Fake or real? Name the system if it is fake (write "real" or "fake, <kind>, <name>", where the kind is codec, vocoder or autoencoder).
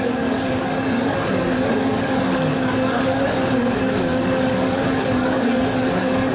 fake, codec, DAC